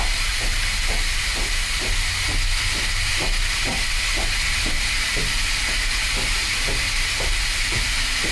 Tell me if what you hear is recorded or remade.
recorded